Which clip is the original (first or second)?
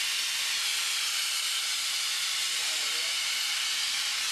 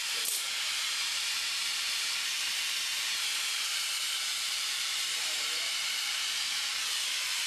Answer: first